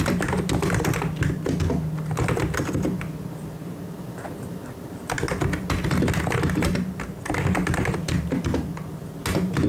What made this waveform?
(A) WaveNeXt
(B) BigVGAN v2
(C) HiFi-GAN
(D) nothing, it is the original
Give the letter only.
D